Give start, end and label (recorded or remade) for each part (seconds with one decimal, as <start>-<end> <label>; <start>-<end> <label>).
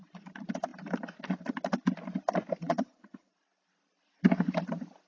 0.0-2.6 recorded; 2.6-3.3 remade; 3.3-5.1 recorded